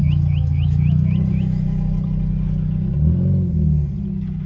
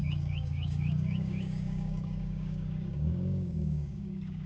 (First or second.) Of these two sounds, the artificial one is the second